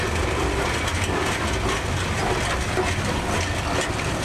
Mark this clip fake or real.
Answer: real